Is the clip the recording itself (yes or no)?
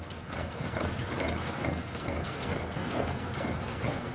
no